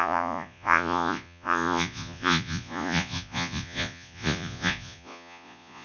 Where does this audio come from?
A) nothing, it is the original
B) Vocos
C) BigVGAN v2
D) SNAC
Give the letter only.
B